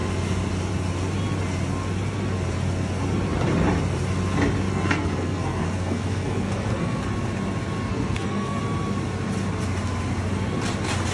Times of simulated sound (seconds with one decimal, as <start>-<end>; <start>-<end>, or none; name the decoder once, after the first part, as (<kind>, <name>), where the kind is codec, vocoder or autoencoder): 4.7-7.0 (codec, SNAC); 7.9-8.6